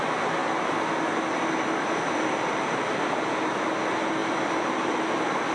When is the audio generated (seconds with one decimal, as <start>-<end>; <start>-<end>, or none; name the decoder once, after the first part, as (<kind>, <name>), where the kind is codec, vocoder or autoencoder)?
none